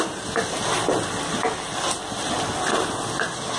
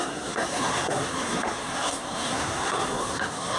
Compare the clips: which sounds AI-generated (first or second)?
second